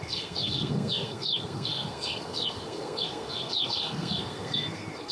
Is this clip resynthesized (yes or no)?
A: yes